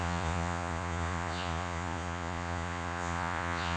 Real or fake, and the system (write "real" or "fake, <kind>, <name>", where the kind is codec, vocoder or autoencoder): fake, vocoder, Vocos